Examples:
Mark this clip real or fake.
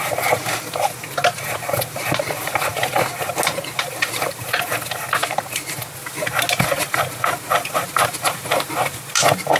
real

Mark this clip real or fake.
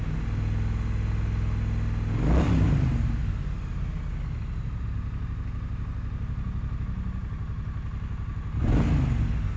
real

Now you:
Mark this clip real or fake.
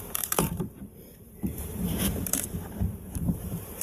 fake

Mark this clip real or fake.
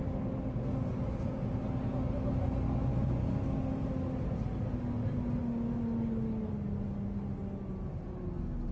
real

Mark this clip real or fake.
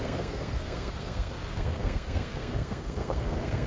fake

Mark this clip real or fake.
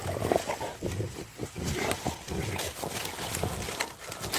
real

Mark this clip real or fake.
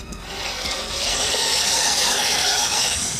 fake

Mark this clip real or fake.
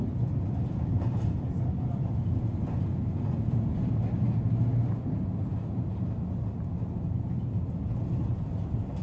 real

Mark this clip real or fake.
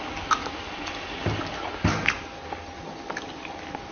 real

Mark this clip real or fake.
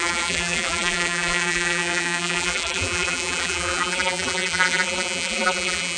fake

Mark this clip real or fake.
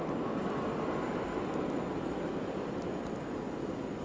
real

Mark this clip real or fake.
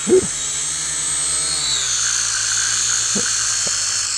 real